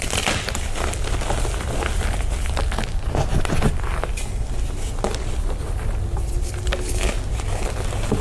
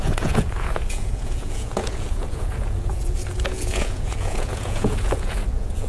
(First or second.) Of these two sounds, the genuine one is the first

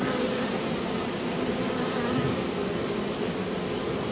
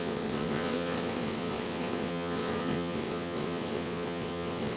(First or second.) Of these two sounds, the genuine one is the first